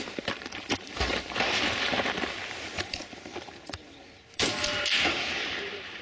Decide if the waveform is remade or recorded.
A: remade